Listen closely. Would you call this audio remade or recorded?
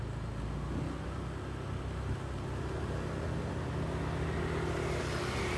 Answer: recorded